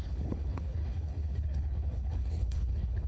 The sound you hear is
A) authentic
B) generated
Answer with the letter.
B